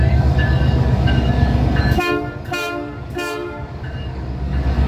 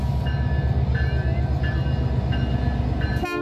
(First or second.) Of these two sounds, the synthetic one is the first